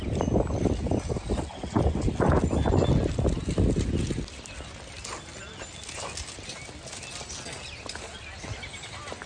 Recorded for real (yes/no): yes